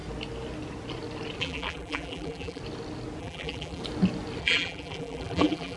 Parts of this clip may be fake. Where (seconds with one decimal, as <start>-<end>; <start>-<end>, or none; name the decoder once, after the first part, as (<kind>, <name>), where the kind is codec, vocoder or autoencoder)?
1.4-2.6 (vocoder, BigVGAN v2); 3.2-3.8; 4.4-5.8